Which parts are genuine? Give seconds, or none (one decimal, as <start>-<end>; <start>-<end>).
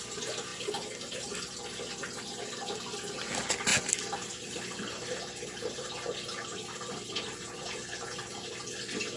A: 0.0-0.5; 2.2-3.7; 8.2-9.2